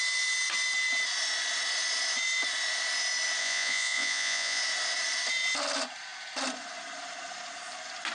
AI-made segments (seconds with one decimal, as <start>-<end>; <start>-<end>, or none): 3.4-4.6